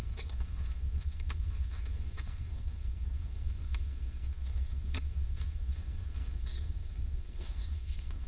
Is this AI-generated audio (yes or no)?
yes